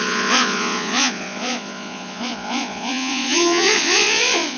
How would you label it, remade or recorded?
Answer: remade